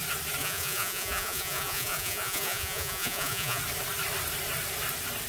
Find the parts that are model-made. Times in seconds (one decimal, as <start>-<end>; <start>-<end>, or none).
0.4-3.6